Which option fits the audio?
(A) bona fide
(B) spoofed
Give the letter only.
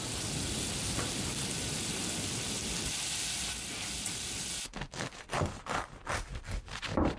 A